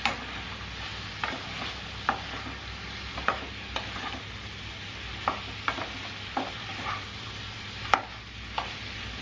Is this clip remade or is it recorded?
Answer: recorded